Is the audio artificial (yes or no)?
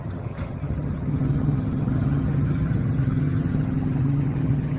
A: yes